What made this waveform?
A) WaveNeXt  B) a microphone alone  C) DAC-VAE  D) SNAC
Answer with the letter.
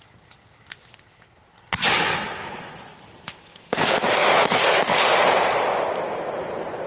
B